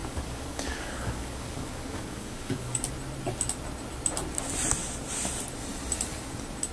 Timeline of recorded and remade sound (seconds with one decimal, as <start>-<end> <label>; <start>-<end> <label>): 0.0-2.9 remade; 2.9-6.7 recorded